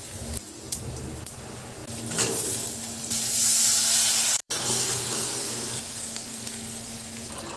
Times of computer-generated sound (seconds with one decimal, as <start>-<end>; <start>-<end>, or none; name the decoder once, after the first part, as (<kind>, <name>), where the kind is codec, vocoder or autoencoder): 4.4-6.9 (codec, SNAC)